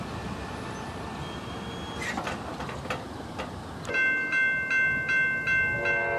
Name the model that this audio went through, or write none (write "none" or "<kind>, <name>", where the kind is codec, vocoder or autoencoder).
none